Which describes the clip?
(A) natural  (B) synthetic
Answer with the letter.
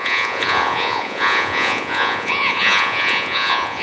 B